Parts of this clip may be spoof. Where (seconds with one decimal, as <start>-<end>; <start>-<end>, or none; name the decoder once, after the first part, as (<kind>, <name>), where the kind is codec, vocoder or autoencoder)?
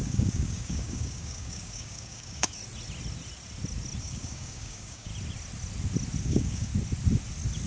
0.0-2.6 (codec, DAC); 4.0-5.1; 6.2-6.7